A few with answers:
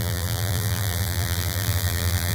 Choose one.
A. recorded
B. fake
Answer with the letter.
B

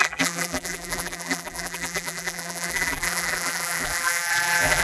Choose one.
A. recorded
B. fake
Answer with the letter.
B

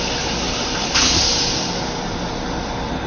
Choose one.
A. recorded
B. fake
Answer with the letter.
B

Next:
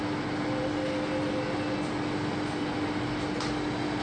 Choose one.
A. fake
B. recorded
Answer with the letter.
B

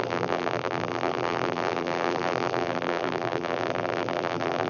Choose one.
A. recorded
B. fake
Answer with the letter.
B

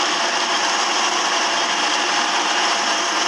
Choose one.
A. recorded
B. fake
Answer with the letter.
A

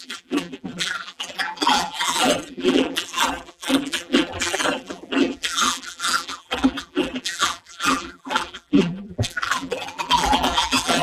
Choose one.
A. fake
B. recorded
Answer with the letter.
A